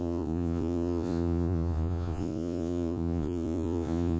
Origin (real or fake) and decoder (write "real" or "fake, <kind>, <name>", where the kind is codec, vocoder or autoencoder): fake, vocoder, Vocos